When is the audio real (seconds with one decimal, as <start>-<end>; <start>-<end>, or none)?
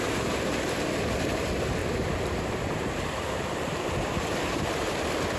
0.0-1.8; 5.0-5.4